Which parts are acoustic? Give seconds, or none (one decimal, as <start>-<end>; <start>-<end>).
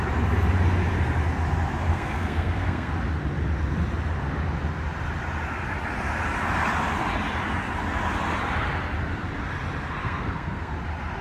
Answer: 0.0-1.9; 2.9-10.0; 10.7-11.2